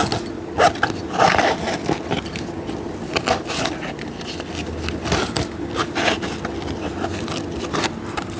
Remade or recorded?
recorded